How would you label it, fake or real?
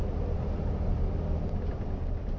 real